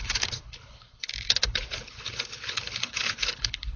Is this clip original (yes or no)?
no